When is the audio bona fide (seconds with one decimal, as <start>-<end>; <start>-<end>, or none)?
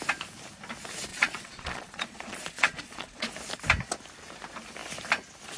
0.0-1.1; 3.3-5.6